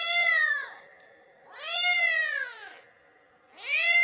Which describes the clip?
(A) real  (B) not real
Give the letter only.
A